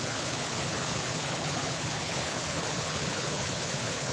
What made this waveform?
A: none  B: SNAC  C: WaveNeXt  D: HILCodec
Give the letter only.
D